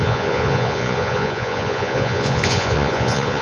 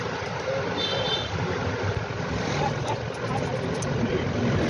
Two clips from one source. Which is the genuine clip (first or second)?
second